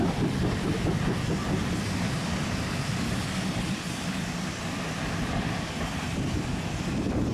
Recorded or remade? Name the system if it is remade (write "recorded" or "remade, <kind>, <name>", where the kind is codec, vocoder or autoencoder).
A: remade, vocoder, BigVGAN v2